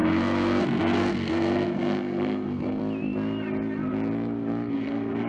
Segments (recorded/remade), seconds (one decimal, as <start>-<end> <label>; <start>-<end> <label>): 0.0-2.8 remade; 2.8-4.7 recorded; 4.7-5.3 remade